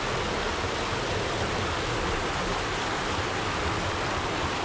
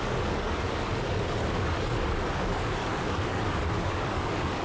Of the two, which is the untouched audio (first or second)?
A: first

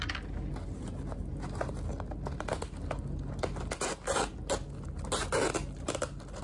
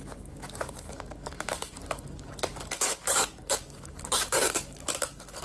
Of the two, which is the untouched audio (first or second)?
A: first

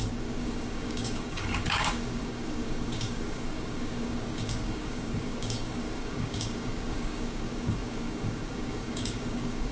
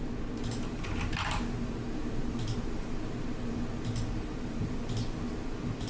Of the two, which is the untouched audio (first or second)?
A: second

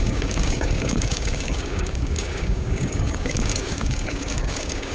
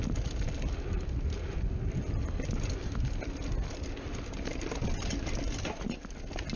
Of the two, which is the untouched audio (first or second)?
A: second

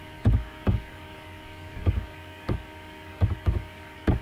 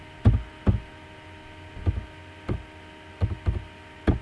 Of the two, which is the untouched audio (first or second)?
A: second